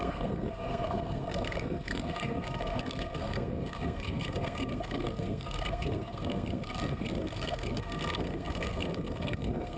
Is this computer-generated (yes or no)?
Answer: yes